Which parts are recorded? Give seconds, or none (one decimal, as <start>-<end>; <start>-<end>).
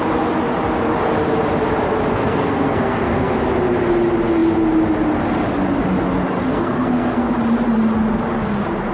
0.0-2.1; 3.3-6.5; 7.3-8.9